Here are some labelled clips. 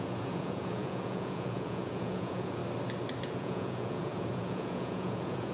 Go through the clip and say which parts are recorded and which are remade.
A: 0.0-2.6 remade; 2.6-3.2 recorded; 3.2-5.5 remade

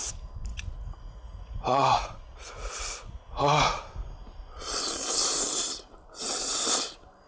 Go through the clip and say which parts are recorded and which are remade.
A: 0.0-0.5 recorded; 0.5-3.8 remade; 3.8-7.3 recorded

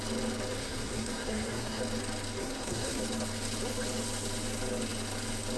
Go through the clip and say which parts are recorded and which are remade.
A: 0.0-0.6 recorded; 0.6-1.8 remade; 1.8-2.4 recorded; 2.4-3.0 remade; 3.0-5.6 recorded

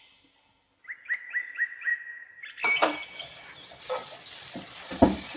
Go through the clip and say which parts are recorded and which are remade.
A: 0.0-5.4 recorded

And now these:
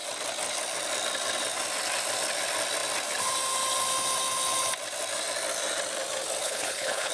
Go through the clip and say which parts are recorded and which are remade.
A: 0.0-6.4 recorded; 6.4-7.1 remade

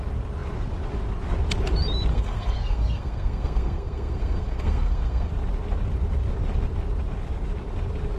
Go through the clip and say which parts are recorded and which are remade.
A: 0.0-2.1 recorded; 2.1-5.3 remade; 5.3-8.2 recorded

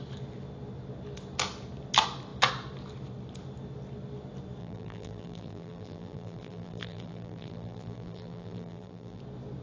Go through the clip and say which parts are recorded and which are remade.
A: 0.0-4.6 recorded; 4.6-9.2 remade; 9.2-9.6 recorded

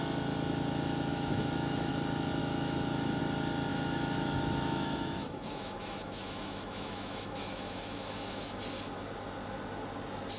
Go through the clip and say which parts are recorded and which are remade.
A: 0.0-1.1 recorded; 1.1-1.9 remade; 1.9-2.4 recorded; 2.4-3.2 remade; 3.2-3.7 recorded; 3.7-8.6 remade; 8.6-10.4 recorded